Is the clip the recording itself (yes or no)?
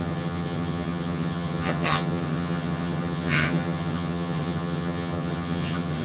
no